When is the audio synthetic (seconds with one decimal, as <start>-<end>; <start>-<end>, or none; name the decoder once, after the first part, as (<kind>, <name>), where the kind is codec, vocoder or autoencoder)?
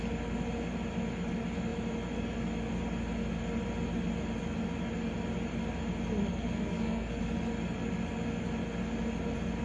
6.3-7.2 (codec, SNAC)